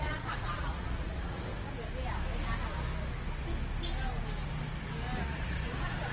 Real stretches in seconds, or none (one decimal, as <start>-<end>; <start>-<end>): 1.5-5.2